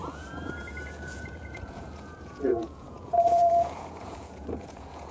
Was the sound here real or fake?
fake